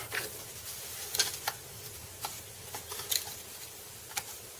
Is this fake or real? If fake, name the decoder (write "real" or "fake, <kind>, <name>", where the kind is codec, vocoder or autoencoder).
real